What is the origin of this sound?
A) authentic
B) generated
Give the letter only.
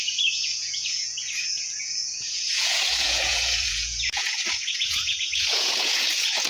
B